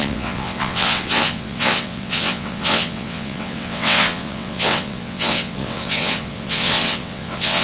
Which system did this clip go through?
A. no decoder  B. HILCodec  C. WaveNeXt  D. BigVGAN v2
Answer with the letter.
C